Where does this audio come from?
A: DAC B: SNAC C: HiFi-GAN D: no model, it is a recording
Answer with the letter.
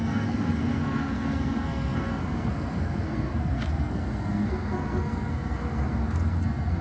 B